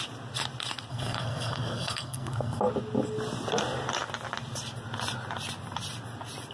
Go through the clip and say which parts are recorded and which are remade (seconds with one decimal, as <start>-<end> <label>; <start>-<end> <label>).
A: 0.0-0.9 recorded; 0.9-2.6 remade; 2.6-6.5 recorded